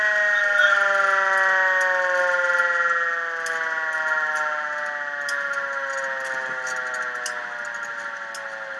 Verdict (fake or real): real